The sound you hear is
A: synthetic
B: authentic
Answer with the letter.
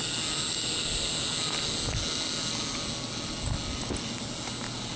B